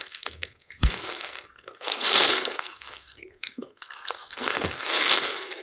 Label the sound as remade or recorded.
remade